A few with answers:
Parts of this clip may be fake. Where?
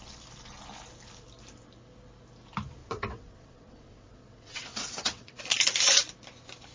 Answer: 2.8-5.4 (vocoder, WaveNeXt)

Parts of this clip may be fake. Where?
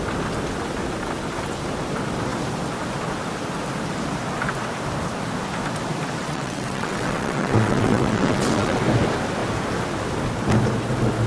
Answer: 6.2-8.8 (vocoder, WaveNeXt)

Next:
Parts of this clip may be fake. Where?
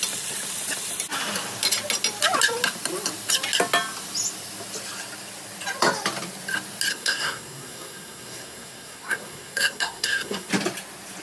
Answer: 6.9-10.5 (codec, SNAC)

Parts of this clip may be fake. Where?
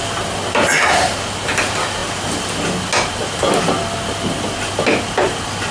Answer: none